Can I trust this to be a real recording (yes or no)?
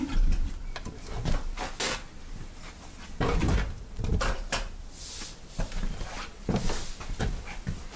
yes